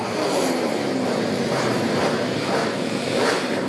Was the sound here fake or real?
fake